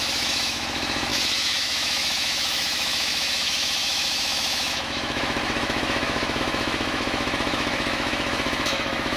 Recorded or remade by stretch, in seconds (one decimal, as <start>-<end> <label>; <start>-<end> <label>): 0.0-9.2 remade